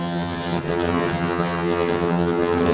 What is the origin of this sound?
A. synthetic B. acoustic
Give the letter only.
A